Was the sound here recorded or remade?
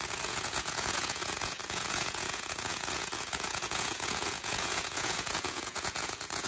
remade